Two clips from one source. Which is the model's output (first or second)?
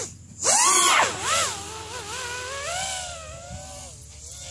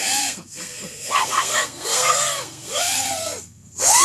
second